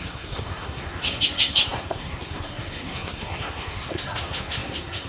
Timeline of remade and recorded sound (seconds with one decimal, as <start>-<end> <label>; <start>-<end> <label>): 0.0-5.1 remade